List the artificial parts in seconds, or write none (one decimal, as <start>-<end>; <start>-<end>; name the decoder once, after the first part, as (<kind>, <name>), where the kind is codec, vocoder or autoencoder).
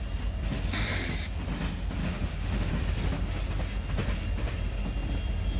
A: 2.0-2.7 (autoencoder, DAC-VAE)